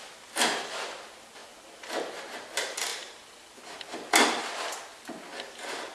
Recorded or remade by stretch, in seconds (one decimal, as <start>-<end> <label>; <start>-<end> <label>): 0.0-5.9 recorded